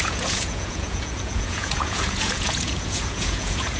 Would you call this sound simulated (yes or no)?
yes